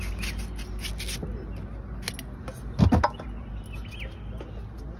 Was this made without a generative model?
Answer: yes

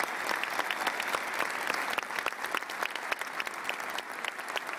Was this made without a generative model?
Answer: yes